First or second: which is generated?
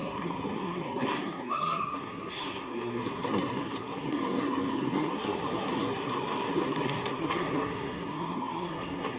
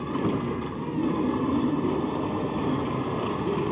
first